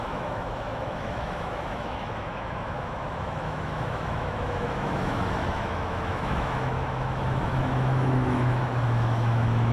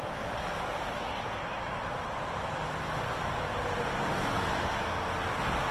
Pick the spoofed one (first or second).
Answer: first